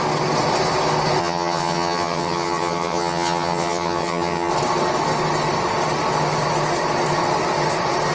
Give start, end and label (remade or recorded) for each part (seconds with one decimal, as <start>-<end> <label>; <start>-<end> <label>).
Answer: 0.0-1.2 recorded; 1.2-4.5 remade; 4.5-8.1 recorded